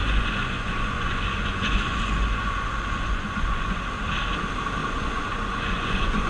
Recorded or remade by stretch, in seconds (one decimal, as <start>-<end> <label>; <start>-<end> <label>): 0.0-3.8 remade; 3.8-4.8 recorded; 4.8-6.3 remade